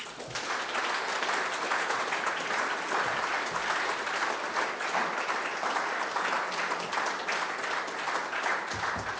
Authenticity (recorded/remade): recorded